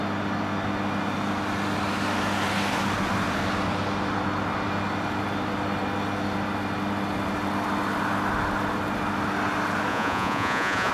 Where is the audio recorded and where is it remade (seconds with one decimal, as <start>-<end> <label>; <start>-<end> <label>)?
0.0-9.9 recorded; 9.9-10.9 remade